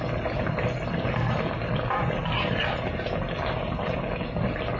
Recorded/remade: recorded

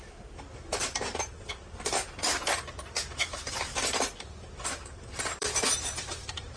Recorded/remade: remade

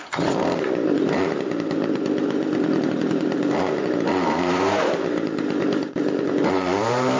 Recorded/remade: remade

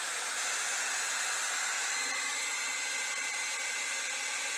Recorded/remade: recorded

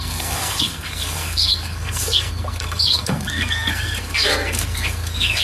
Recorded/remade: remade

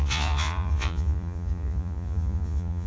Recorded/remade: remade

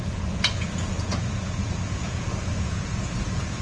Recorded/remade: remade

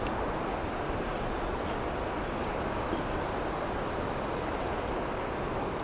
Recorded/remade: recorded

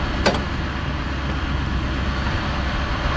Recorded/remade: recorded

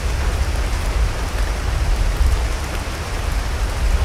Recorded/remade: remade